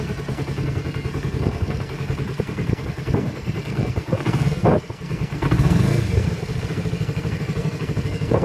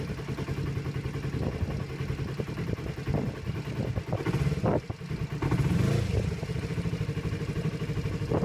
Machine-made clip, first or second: first